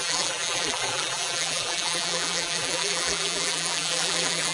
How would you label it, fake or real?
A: fake